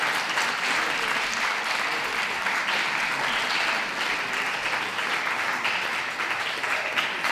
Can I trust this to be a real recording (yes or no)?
yes